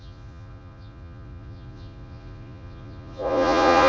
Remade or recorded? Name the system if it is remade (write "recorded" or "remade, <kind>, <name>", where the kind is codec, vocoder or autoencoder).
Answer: remade, vocoder, Vocos